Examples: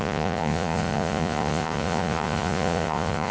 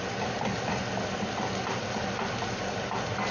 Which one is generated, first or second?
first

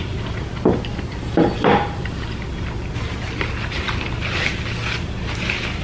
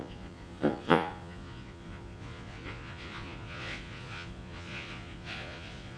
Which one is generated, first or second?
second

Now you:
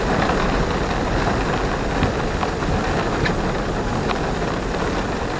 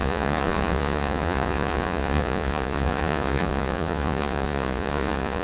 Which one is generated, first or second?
second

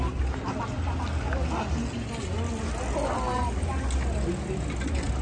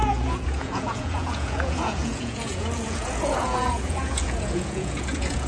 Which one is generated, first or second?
second